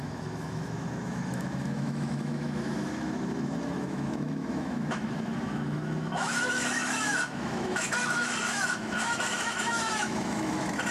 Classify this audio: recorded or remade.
remade